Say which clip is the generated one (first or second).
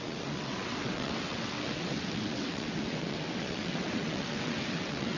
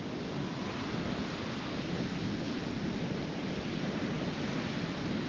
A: first